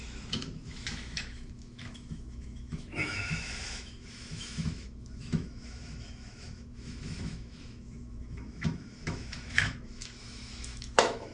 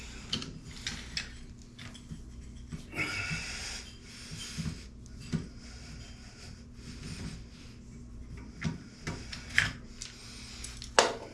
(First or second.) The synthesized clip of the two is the first